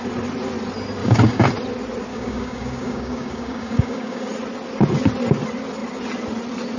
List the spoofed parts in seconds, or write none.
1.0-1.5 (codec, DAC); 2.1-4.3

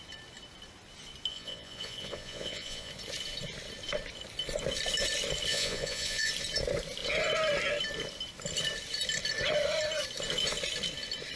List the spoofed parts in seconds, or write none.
1.3-2.9 (vocoder, Vocos); 5.5-6.3

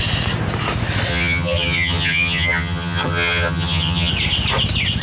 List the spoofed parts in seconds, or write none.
1.1-4.1 (vocoder, HiFi-GAN)

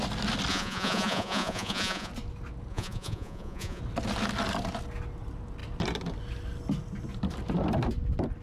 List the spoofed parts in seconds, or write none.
0.5-2.1 (vocoder, Vocos); 2.7-3.8